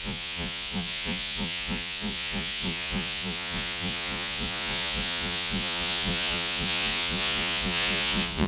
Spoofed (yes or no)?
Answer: yes